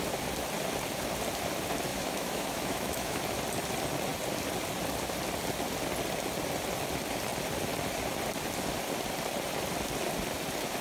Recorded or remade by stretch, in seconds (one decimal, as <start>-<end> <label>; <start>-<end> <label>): 0.0-1.9 recorded; 1.9-3.2 remade; 3.2-10.8 recorded